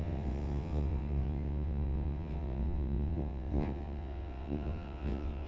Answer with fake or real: fake